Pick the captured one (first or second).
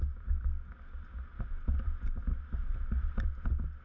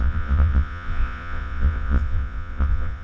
first